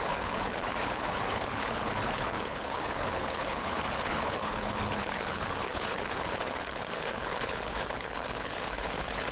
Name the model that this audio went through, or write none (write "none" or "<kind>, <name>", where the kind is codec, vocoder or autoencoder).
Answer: codec, HILCodec